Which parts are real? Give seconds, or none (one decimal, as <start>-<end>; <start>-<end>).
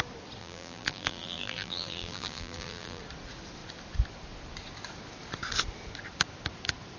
0.0-0.4; 3.0-7.0